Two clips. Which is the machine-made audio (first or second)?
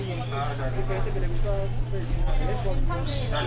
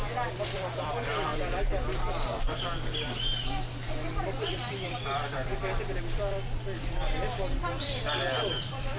second